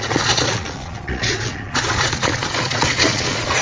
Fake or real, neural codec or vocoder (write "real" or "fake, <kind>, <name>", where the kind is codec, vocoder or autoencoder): fake, vocoder, Vocos